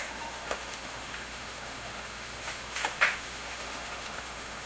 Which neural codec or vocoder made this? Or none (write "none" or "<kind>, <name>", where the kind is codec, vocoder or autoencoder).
autoencoder, DAC-VAE